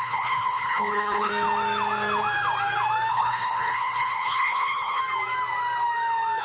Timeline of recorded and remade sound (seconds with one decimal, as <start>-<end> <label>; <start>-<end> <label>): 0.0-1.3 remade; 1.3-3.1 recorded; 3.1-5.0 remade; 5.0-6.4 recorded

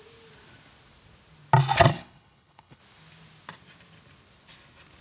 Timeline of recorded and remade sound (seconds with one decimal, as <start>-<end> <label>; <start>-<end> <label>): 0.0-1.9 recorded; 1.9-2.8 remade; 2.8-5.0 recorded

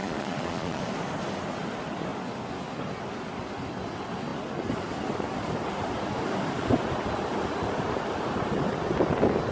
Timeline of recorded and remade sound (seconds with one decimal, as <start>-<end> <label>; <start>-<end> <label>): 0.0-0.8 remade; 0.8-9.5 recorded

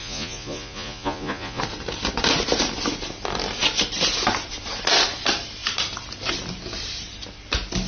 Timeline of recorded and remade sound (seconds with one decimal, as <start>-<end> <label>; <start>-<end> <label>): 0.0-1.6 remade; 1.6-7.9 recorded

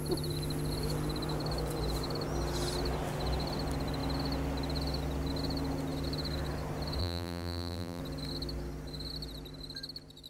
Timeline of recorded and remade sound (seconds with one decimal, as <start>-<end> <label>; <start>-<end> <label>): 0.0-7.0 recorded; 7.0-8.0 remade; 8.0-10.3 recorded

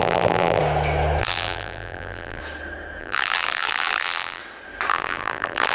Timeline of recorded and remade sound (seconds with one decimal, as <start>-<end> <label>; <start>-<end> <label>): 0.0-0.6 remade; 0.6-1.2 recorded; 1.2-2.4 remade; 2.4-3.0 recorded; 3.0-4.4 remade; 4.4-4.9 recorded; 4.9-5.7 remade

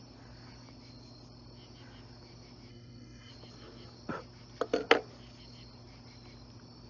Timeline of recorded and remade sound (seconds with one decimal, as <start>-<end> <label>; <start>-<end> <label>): 0.0-2.7 recorded; 2.7-3.3 remade; 3.3-6.9 recorded

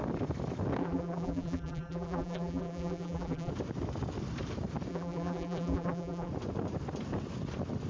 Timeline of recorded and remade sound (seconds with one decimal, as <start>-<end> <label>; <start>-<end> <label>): 0.0-0.8 recorded; 0.8-3.5 remade; 3.5-4.9 recorded; 4.9-6.3 remade; 6.3-7.9 recorded